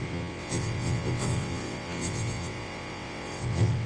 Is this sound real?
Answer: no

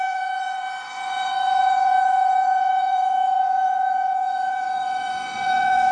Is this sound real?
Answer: no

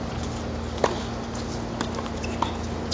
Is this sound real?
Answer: yes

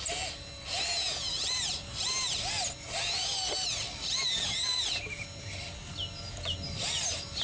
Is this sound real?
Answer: yes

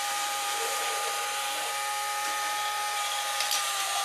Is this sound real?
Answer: no